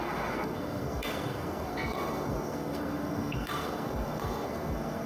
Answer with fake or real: fake